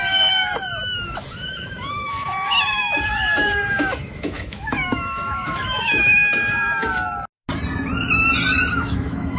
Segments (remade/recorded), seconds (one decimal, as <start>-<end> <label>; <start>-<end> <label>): 0.0-0.5 remade; 0.5-1.3 recorded; 1.3-6.9 remade; 6.9-8.7 recorded; 8.7-9.4 remade